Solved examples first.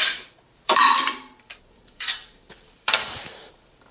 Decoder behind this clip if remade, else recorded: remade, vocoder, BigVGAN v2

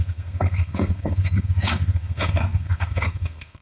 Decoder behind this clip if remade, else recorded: remade, codec, SNAC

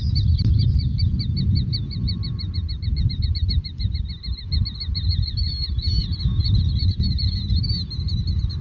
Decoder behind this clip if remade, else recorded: remade, vocoder, BigVGAN v2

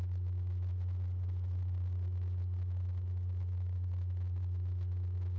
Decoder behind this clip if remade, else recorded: recorded